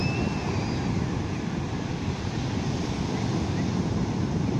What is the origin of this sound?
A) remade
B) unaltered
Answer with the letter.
B